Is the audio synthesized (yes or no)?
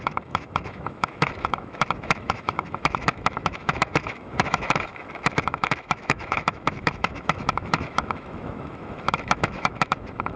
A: yes